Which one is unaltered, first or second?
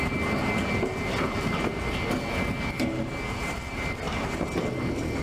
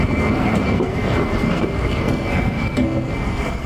first